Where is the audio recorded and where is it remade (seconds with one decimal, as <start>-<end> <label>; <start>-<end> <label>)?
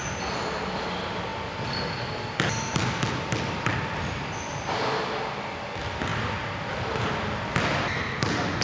0.0-8.6 recorded